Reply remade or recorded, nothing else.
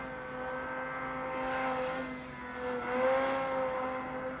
recorded